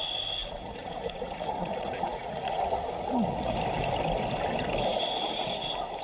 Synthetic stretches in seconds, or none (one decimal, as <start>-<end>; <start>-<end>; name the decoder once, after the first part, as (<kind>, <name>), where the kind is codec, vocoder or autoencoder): 0.4-3.6 (vocoder, Vocos)